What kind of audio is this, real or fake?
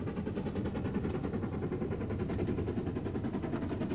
real